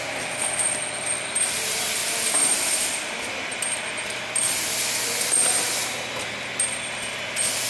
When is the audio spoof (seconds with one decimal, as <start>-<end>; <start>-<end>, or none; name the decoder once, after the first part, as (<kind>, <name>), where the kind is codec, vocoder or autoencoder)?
none